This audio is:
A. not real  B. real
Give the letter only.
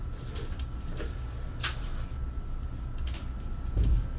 B